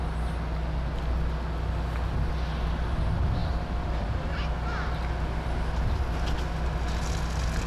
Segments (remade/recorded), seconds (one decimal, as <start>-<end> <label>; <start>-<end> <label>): 0.0-7.7 recorded